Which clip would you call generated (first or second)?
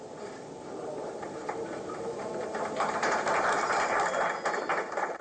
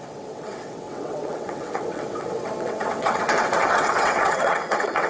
second